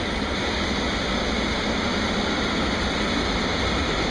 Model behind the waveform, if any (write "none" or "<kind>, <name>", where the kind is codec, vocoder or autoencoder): none